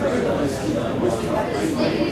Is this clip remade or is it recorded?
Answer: recorded